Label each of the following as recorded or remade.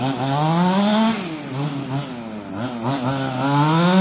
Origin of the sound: recorded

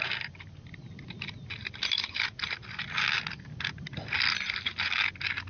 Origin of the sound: recorded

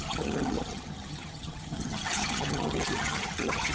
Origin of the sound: remade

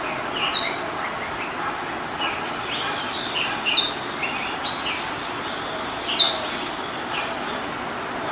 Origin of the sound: recorded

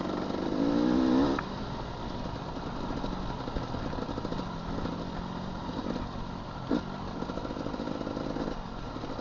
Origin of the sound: recorded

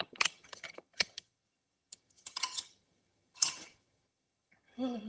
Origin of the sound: remade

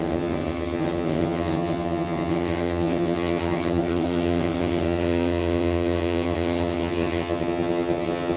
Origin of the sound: remade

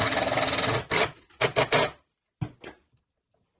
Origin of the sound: recorded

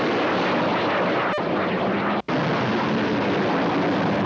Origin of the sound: recorded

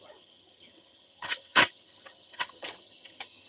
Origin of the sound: remade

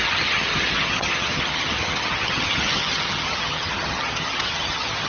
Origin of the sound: remade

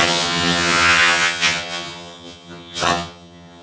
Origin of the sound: remade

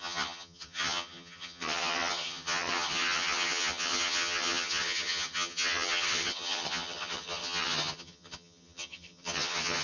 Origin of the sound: remade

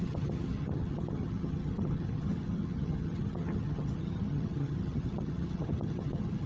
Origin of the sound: remade